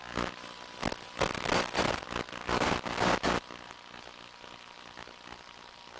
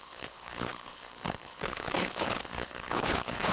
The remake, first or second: second